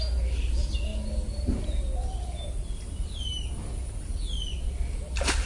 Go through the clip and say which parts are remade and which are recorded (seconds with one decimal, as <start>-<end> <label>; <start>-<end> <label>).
0.0-5.5 recorded